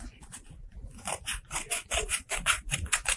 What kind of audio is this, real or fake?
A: fake